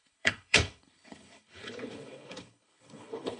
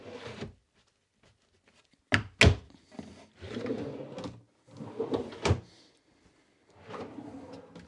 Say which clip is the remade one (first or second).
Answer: first